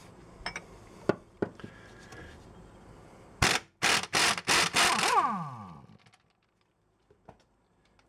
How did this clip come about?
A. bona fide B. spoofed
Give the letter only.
A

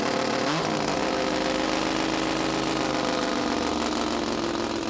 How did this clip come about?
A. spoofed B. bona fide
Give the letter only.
B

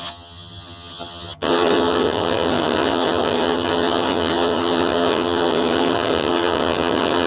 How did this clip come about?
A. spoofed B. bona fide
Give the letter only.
A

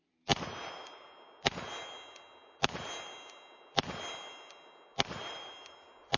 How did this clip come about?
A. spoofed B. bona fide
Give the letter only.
B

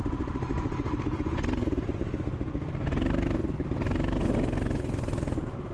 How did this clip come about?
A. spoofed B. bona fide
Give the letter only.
B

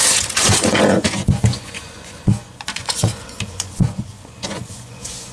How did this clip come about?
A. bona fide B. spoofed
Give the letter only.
B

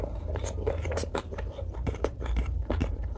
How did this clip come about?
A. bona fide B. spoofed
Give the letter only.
B